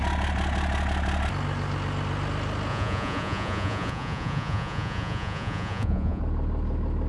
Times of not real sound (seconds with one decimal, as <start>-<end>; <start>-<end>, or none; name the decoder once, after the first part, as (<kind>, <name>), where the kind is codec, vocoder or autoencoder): 2.7-6.2 (vocoder, Vocos)